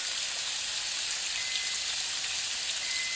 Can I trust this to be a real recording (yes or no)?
yes